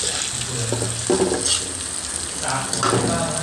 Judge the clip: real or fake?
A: real